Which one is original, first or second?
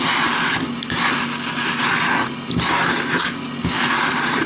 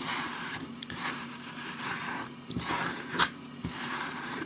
first